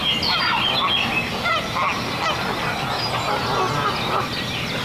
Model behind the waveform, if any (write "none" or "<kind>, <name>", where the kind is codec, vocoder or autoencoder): none